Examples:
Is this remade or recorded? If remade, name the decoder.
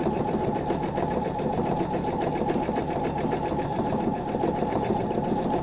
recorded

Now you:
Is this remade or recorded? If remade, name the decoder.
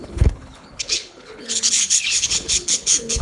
remade, codec, HILCodec